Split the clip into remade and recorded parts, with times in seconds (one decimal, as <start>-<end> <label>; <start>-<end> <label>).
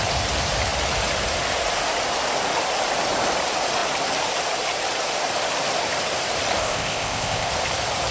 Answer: 0.0-6.6 recorded; 6.6-7.5 remade; 7.5-8.1 recorded